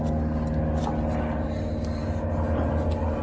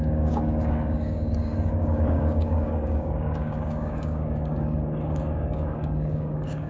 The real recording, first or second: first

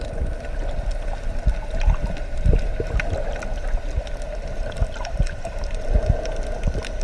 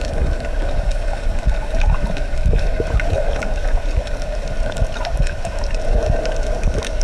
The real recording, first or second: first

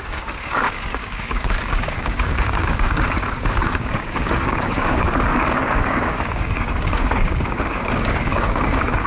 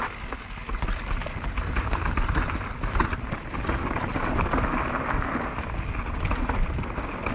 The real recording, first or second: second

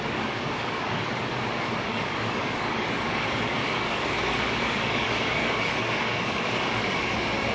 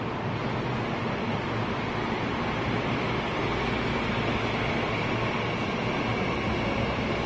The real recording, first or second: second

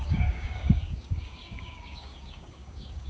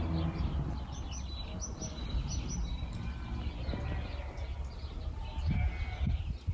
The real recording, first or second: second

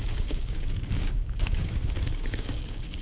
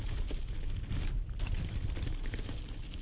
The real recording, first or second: second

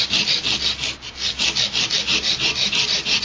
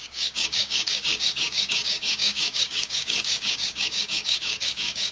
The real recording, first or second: first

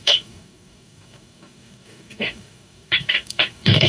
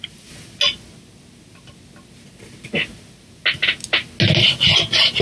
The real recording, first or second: second